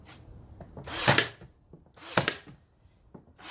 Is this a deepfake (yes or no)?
no